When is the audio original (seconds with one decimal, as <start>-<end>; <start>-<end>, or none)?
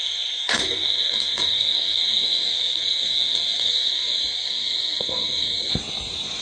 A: 5.7-6.4